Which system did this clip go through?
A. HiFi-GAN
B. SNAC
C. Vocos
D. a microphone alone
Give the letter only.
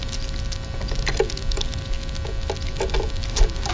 D